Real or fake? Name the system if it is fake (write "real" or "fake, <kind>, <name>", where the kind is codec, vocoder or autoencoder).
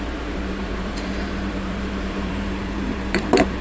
fake, vocoder, BigVGAN v2